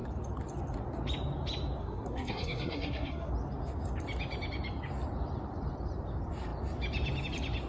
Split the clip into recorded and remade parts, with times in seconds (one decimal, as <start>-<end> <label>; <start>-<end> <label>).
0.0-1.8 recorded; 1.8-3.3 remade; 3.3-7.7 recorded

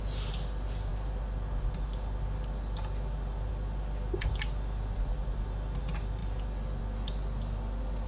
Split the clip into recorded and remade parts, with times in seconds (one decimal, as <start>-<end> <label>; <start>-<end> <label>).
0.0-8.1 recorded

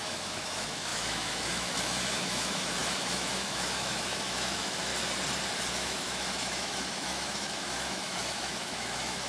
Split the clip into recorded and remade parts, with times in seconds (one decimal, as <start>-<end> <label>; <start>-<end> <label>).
0.0-4.9 remade; 4.9-5.7 recorded; 5.7-9.3 remade